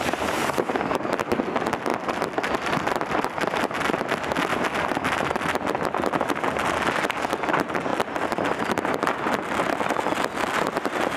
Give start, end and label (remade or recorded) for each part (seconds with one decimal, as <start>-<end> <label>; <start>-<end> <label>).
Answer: 0.0-1.9 recorded; 1.9-3.6 remade; 3.6-7.9 recorded; 7.9-8.8 remade; 8.8-11.2 recorded